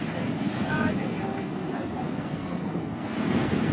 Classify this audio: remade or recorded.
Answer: remade